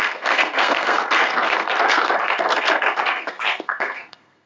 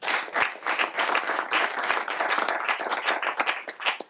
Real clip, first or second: second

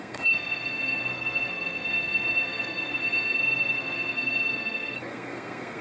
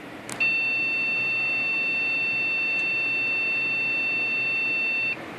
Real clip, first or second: second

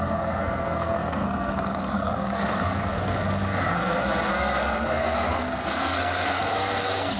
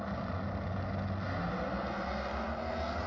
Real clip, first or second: second